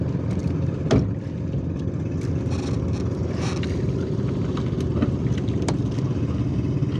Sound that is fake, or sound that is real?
real